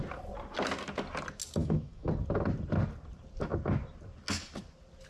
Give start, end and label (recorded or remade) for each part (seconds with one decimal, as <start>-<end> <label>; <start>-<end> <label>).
0.0-1.6 recorded; 1.6-2.1 remade; 2.1-5.1 recorded